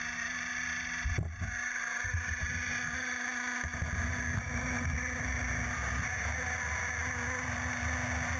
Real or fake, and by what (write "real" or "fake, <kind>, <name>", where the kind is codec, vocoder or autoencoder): real